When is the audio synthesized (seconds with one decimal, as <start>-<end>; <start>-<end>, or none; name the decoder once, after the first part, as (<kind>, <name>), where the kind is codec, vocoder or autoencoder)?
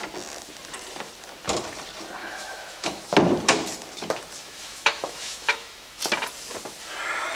2.2-3.0 (autoencoder, DAC-VAE); 4.4-6.0